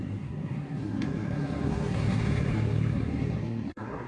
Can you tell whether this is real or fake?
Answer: fake